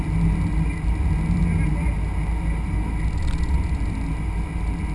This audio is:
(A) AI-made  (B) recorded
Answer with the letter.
B